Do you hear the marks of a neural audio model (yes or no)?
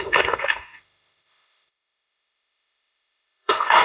yes